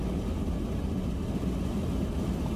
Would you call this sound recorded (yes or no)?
yes